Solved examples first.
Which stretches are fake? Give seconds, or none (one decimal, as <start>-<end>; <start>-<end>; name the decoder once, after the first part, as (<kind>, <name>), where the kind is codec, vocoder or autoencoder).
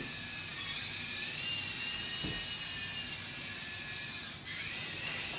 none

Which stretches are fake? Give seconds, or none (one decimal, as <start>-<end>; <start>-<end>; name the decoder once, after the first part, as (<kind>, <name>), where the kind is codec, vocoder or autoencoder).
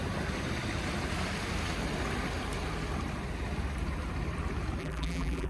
4.8-5.5 (vocoder, BigVGAN v2)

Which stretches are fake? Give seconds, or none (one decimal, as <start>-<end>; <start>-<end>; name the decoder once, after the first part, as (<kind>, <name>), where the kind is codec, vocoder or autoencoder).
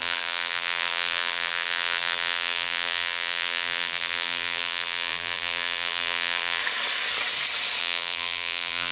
0.0-6.6 (vocoder, BigVGAN v2); 7.8-8.9